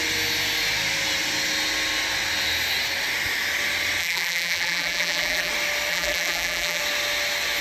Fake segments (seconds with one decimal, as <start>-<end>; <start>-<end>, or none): 4.0-5.5; 5.9-6.8